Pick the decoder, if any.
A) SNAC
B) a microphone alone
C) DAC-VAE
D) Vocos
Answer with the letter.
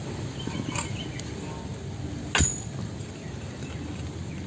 B